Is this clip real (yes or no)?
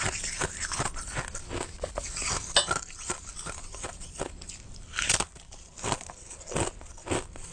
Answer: yes